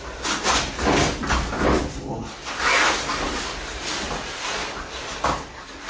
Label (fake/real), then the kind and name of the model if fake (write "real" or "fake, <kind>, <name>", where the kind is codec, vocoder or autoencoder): real